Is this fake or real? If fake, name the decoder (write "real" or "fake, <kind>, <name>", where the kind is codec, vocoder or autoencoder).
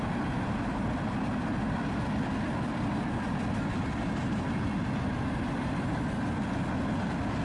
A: real